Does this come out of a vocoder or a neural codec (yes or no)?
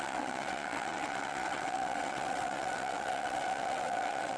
yes